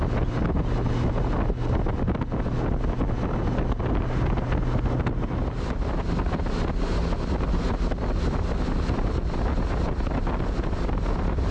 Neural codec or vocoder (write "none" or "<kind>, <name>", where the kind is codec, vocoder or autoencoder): none